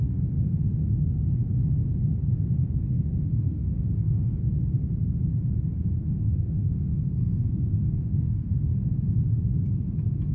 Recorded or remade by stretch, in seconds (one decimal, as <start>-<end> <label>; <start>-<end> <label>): 0.0-1.4 remade; 1.4-2.8 recorded; 2.8-4.4 remade; 4.4-6.0 recorded; 6.0-8.7 remade; 8.7-10.3 recorded